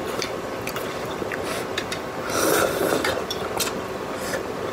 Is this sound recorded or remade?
recorded